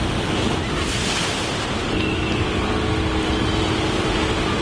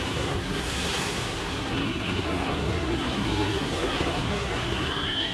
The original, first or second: first